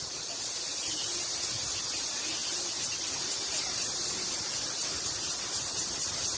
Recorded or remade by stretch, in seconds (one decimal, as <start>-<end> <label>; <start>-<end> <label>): 0.0-6.4 recorded